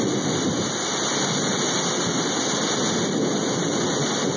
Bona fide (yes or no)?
yes